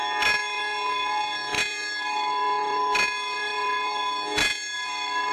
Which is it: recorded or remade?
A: recorded